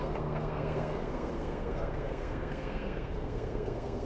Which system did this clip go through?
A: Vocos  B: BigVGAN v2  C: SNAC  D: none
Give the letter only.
C